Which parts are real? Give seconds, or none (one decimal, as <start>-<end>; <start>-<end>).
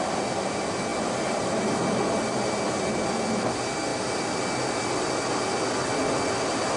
0.0-0.9; 1.6-6.8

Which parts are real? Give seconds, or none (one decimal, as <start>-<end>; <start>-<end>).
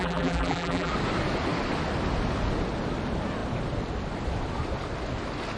0.9-5.6